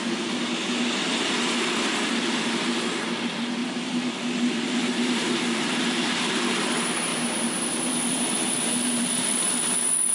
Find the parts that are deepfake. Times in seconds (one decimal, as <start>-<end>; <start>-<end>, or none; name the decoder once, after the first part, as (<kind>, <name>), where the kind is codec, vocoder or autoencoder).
3.6-5.8 (vocoder, BigVGAN v2); 7.1-8.5